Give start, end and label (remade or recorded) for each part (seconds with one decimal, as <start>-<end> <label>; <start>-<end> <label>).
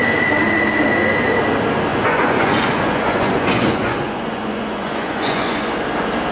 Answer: 0.0-1.9 recorded; 1.9-5.7 remade; 5.7-6.3 recorded